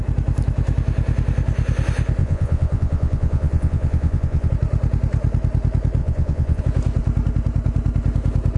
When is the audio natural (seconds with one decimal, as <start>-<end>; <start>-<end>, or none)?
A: 0.0-2.2; 4.5-6.0; 6.6-8.6